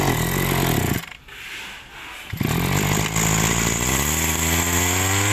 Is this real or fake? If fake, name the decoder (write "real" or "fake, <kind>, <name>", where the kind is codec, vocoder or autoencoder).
real